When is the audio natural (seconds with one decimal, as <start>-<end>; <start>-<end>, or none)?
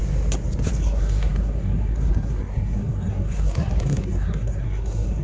0.0-0.8